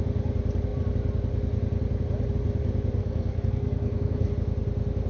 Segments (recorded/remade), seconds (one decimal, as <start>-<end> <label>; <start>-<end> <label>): 0.0-3.0 recorded; 3.0-4.3 remade; 4.3-5.1 recorded